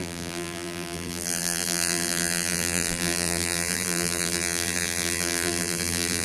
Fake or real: fake